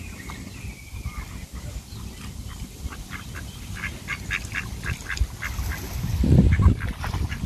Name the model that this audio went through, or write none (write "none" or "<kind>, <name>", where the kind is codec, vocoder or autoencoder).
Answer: none